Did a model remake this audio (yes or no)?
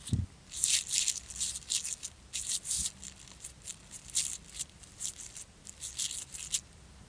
no